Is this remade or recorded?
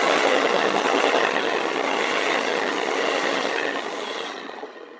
remade